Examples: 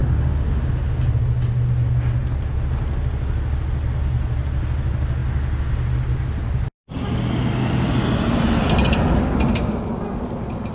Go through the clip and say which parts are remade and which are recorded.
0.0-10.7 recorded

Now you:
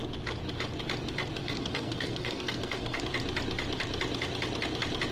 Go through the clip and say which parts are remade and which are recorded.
0.0-1.4 recorded; 1.4-3.0 remade; 3.0-5.1 recorded

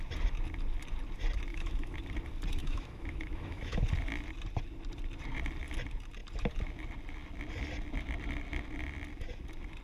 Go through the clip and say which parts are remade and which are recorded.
0.0-1.5 recorded; 1.5-2.0 remade; 2.0-2.6 recorded; 2.6-3.8 remade; 3.8-9.8 recorded

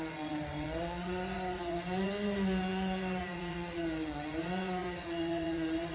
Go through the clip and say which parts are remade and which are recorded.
0.0-5.9 remade